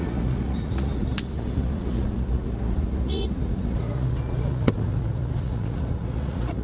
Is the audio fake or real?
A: fake